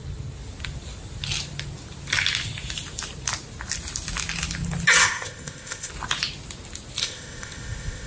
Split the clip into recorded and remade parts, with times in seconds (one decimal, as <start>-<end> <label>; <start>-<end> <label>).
0.0-5.0 recorded; 5.0-5.9 remade; 5.9-7.0 recorded; 7.0-8.1 remade